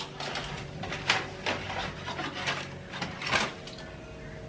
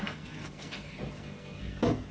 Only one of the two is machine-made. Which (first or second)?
second